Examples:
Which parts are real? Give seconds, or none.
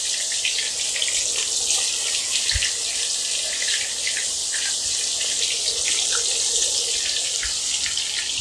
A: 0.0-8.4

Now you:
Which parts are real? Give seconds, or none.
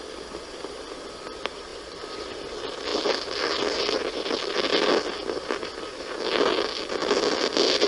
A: 0.0-1.7; 2.3-2.9; 4.3-4.7; 6.4-7.9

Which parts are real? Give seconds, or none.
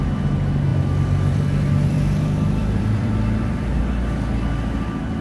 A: 0.0-0.7; 3.8-5.2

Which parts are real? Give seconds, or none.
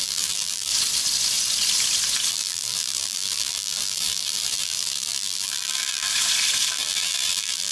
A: 0.7-2.3; 6.1-6.7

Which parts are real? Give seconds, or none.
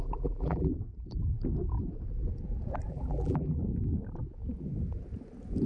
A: 0.7-2.9; 3.6-5.7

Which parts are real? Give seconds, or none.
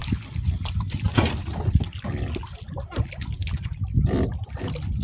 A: 1.5-3.4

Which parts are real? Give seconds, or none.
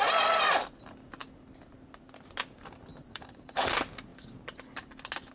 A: 0.0-2.9; 3.6-5.3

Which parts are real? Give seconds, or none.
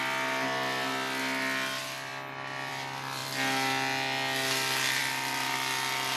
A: 0.0-6.2